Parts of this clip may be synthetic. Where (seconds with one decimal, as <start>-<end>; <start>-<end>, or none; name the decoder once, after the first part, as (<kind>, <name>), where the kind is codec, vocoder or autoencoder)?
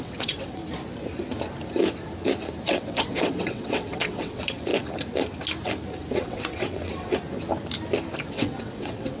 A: 0.0-0.6 (vocoder, WaveNeXt); 2.7-4.7; 6.1-7.1; 8.3-9.2